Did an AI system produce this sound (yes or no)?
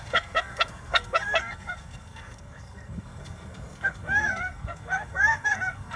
yes